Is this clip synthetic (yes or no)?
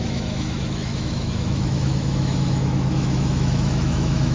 yes